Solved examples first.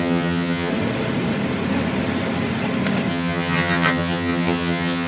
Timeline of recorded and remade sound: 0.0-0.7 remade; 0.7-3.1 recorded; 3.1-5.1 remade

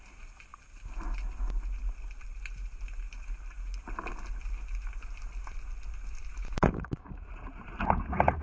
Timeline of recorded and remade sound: 0.0-6.3 recorded; 6.3-7.3 remade; 7.3-8.4 recorded

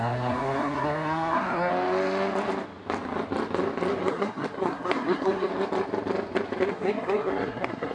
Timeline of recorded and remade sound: 0.0-1.7 remade; 1.7-4.1 recorded; 4.1-5.5 remade; 5.5-6.7 recorded; 6.7-7.9 remade

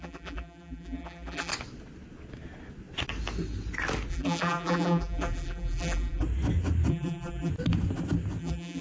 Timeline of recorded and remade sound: 0.0-1.5 remade; 1.5-4.1 recorded; 4.1-6.2 remade; 6.2-6.9 recorded; 6.9-7.5 remade; 7.5-8.4 recorded; 8.4-8.8 remade

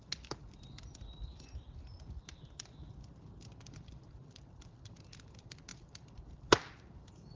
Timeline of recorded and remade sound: 0.0-7.4 recorded